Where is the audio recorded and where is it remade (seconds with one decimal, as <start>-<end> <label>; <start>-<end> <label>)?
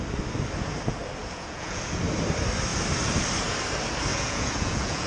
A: 0.0-1.2 recorded; 1.2-2.0 remade; 2.0-4.1 recorded; 4.1-5.1 remade